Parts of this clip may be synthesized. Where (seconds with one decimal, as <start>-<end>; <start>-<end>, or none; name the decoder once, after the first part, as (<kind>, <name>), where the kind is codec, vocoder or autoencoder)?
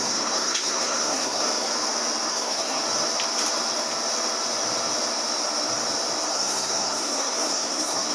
0.0-1.7 (codec, SNAC); 2.3-2.8; 6.3-8.1